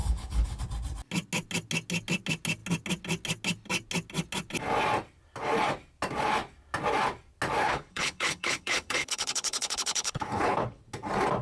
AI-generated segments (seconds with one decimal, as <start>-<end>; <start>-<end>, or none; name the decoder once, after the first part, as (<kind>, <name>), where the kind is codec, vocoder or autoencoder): 0.0-0.6 (codec, HILCodec); 7.6-10.8